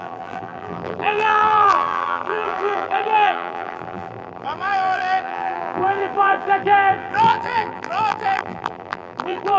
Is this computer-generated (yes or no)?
yes